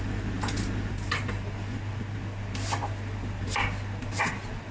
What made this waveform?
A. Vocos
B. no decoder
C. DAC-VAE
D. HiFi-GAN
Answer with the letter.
B